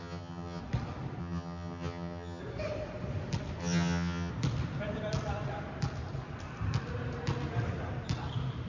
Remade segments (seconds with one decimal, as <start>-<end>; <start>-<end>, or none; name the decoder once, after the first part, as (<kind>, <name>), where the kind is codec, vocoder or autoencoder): 0.0-0.6 (vocoder, HiFi-GAN); 1.2-2.4; 3.6-4.3